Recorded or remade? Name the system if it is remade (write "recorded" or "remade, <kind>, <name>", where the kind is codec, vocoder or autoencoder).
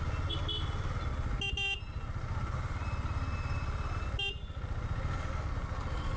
recorded